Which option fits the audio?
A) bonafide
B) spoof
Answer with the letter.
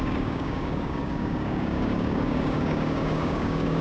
B